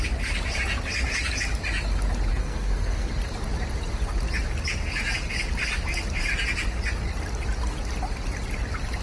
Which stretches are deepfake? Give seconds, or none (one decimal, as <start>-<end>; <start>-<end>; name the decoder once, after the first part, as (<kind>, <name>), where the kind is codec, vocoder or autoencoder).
2.3-3.1 (codec, SNAC)

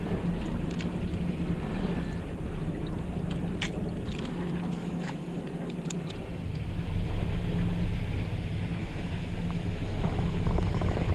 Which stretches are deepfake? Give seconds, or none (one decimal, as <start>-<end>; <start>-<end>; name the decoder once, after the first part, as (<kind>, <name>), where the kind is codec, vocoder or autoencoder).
4.8-5.4 (autoencoder, DAC-VAE); 8.8-11.1